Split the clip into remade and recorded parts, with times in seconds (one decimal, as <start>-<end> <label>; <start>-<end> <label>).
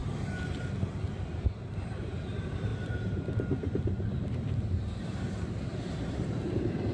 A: 0.0-1.3 recorded; 1.3-2.7 remade; 2.7-5.0 recorded; 5.0-6.9 remade